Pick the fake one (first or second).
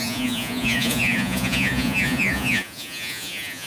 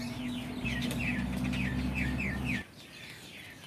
first